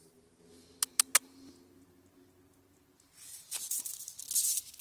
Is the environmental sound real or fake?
real